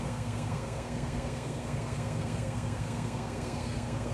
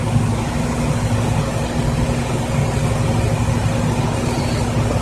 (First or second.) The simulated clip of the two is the first